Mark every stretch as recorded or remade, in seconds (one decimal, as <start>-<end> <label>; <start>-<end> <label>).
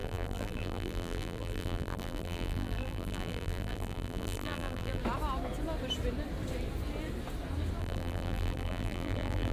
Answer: 0.0-5.0 remade; 5.0-7.8 recorded; 7.8-9.5 remade